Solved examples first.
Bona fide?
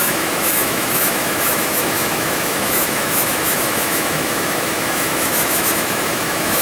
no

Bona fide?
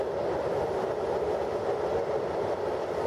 yes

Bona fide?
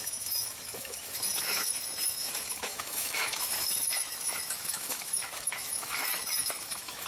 no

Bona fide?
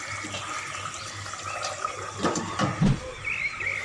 yes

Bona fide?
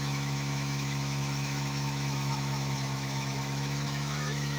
no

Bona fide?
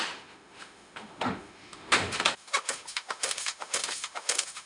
no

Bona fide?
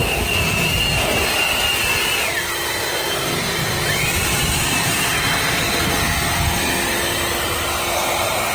yes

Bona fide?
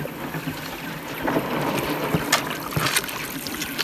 yes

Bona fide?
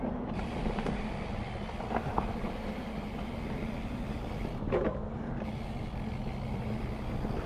yes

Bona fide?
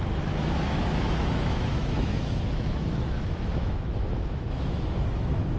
no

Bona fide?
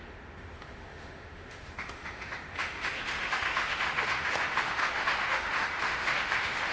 no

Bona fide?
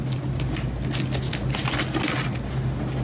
yes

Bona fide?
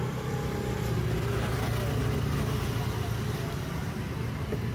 yes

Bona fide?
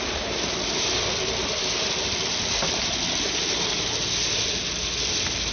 yes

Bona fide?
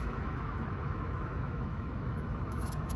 no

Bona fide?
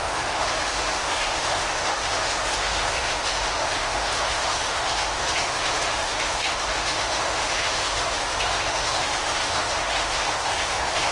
no